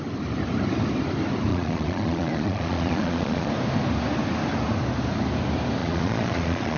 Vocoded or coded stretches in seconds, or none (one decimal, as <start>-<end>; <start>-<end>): 1.5-3.5; 5.8-6.8